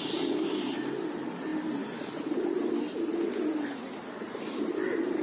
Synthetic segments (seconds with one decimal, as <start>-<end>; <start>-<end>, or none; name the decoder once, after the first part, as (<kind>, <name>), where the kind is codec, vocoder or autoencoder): none